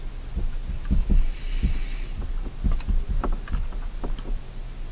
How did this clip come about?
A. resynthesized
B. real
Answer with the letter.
B